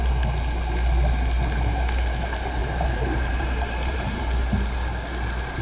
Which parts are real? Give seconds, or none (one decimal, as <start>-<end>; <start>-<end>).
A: 0.0-2.6; 4.2-5.6